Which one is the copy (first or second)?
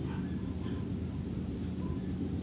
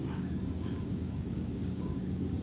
second